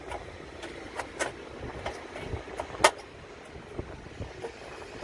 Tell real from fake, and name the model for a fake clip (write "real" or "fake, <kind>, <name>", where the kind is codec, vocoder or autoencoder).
real